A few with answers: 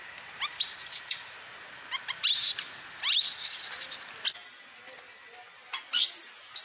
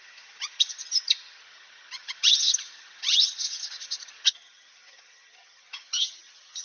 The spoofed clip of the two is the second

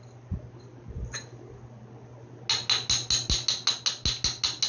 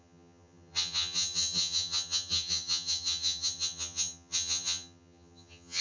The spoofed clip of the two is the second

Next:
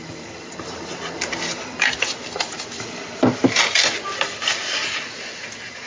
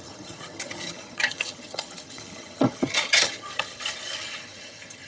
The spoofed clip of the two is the second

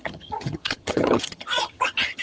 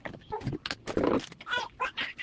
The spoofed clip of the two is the first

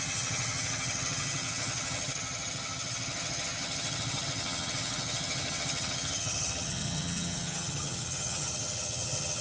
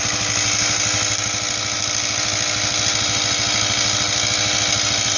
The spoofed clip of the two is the first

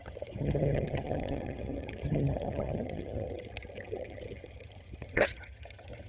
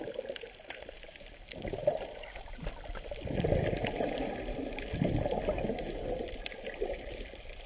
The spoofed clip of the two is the first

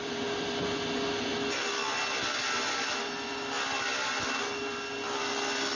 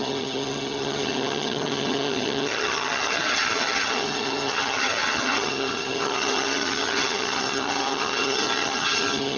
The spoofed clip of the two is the second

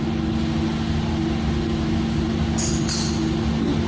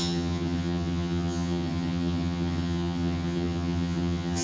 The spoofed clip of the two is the second